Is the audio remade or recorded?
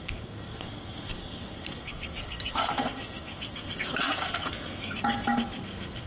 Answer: remade